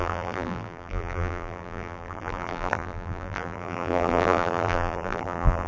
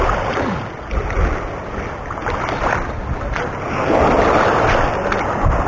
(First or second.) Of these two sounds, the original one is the second